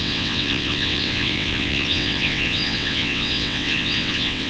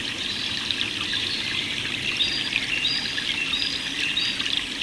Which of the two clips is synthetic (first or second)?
first